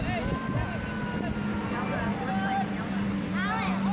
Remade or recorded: recorded